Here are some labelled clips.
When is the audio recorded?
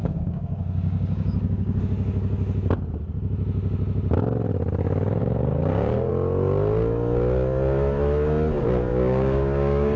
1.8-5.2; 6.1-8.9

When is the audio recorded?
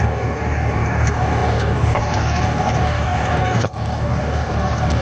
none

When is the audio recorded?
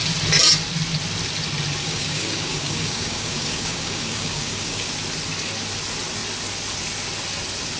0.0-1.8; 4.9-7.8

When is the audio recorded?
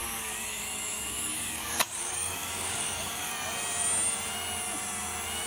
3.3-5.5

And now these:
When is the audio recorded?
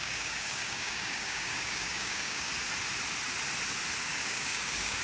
2.5-4.0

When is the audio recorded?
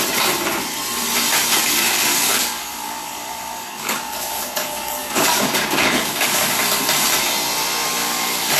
0.0-1.6; 6.6-8.0